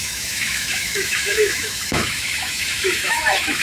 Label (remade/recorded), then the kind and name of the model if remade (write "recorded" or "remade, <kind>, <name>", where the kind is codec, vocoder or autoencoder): remade, autoencoder, DAC-VAE